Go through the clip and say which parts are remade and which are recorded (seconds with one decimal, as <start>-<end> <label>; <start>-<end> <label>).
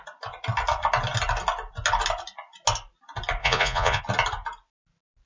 0.0-3.4 recorded; 3.4-4.0 remade; 4.0-5.3 recorded